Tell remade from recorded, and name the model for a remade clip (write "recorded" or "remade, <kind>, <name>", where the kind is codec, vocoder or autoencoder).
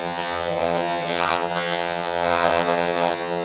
remade, vocoder, HiFi-GAN